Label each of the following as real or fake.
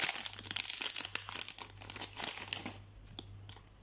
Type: real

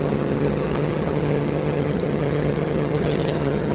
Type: fake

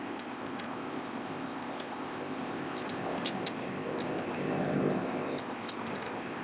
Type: fake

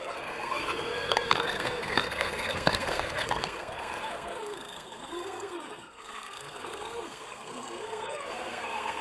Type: fake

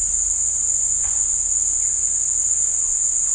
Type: real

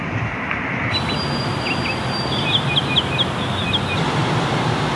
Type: real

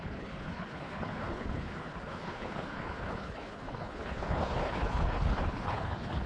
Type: fake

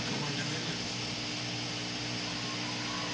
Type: real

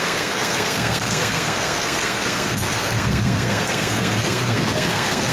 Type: fake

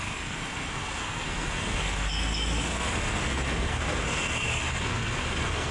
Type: fake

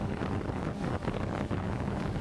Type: fake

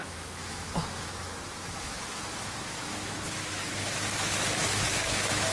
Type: fake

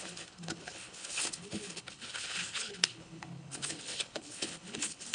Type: fake